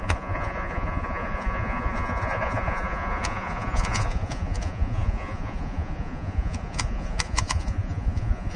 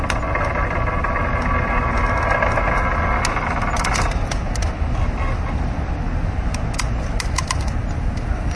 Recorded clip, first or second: second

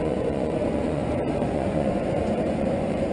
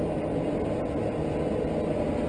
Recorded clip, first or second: second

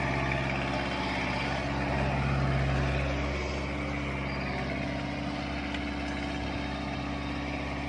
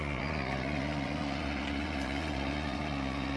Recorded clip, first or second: first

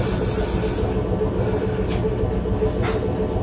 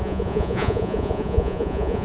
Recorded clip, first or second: first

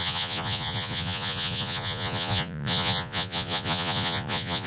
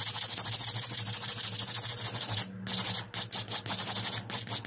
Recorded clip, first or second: second